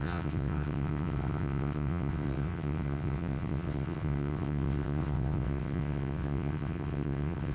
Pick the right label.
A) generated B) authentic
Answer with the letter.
A